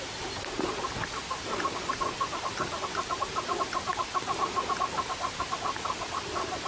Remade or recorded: recorded